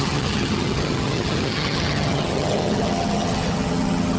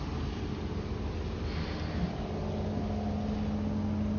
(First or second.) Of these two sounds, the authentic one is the second